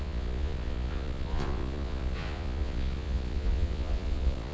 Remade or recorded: remade